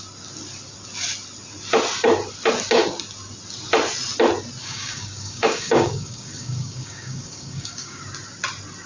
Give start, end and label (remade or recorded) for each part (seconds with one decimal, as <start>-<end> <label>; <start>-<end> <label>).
0.0-4.6 recorded; 4.6-8.0 remade; 8.0-8.9 recorded